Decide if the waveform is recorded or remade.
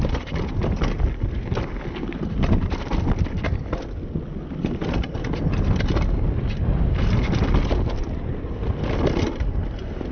recorded